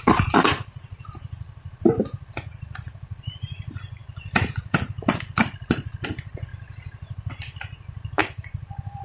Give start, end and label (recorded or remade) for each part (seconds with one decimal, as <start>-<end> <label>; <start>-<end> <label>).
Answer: 0.0-6.5 remade; 6.5-7.3 recorded; 7.3-9.0 remade